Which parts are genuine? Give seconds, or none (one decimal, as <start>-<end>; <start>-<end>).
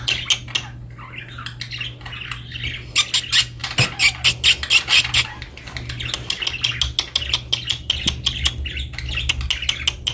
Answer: 0.0-10.1